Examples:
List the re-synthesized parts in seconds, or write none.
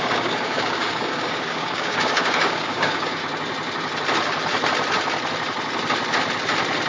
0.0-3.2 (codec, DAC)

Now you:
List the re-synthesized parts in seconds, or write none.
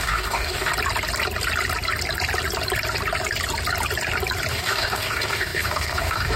0.0-0.7 (codec, DAC); 4.5-6.4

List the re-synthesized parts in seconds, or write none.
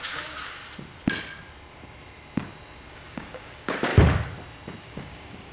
0.0-0.6 (codec, DAC); 2.9-3.9; 4.8-5.5